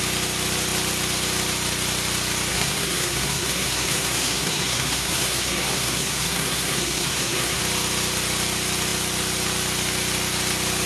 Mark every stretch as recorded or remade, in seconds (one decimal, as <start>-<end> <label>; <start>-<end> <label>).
0.0-2.5 recorded; 2.5-7.6 remade; 7.6-10.9 recorded